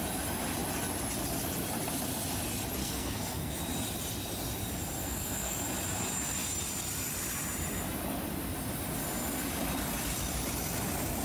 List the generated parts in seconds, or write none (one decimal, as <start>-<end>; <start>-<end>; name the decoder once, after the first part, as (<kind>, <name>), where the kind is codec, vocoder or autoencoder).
2.8-3.6 (codec, SNAC); 5.0-5.6